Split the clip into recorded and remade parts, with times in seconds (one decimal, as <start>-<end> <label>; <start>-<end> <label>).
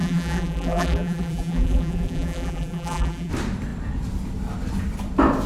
0.0-3.3 remade; 3.3-5.5 recorded